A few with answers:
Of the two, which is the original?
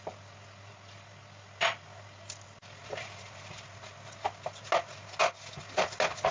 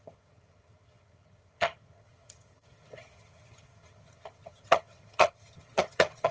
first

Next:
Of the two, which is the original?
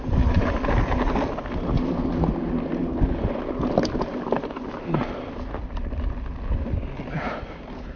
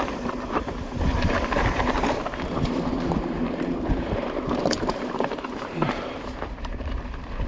first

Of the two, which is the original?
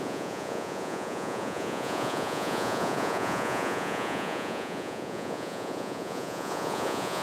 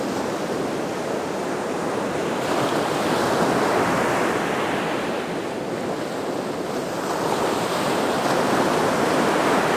second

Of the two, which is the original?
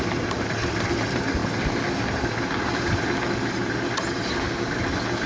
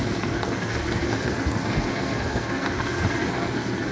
first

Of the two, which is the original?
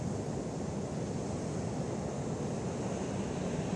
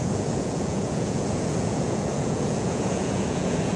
first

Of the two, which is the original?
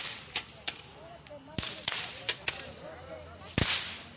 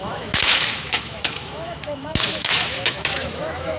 first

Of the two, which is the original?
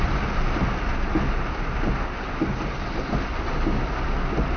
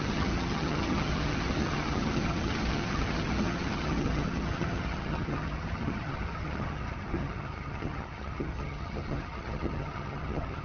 first